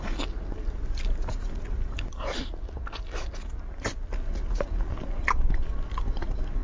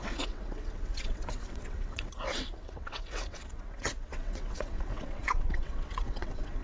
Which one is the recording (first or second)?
first